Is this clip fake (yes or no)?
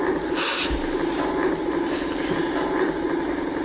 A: no